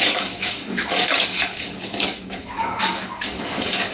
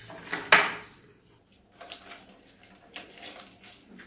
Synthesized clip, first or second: first